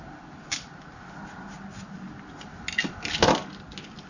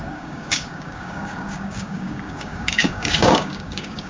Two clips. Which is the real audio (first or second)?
first